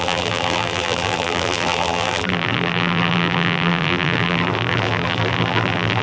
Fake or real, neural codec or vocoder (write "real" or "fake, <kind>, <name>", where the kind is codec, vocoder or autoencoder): fake, vocoder, BigVGAN v2